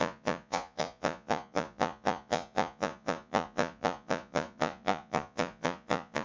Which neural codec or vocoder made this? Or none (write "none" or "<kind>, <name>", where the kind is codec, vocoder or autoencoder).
vocoder, Vocos